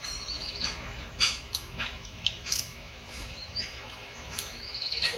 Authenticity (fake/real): fake